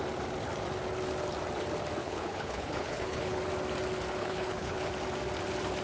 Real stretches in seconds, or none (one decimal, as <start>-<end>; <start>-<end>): 0.0-2.0; 3.4-4.2; 4.9-5.8